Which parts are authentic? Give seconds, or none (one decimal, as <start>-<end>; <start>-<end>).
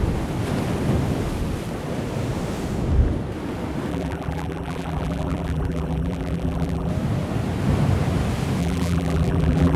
0.0-3.9; 6.9-8.6